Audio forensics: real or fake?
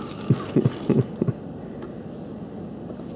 real